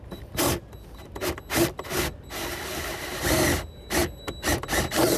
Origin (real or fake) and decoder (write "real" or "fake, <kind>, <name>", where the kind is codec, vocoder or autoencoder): real